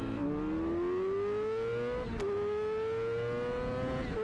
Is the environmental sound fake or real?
real